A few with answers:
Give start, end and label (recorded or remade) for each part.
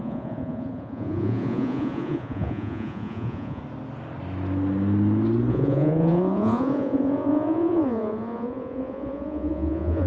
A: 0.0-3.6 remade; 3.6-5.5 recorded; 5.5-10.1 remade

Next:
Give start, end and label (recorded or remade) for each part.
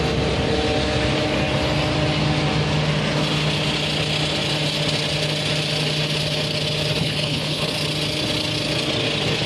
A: 0.0-7.0 recorded; 7.0-7.7 remade; 7.7-9.5 recorded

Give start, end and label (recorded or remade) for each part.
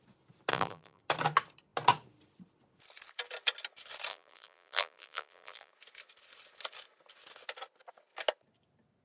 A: 0.0-0.5 recorded; 0.5-1.0 remade; 1.0-4.1 recorded; 4.1-5.7 remade; 5.7-9.0 recorded